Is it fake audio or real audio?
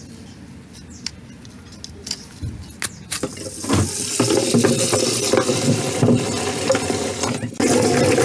real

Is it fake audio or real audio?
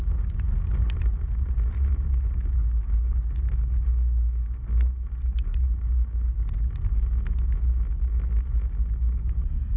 real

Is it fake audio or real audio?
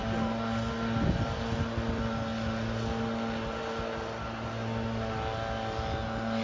real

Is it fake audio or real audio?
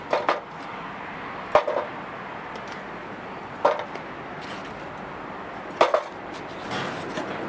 real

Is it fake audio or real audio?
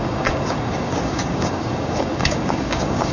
fake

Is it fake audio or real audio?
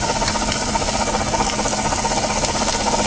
real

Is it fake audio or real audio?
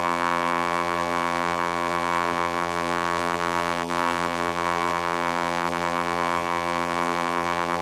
fake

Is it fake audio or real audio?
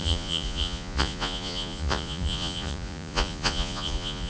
fake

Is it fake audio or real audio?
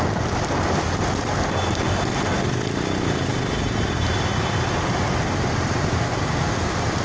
real